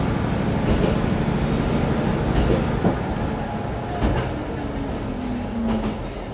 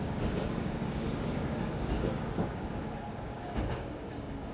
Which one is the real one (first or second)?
first